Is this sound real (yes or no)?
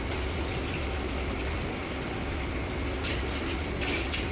yes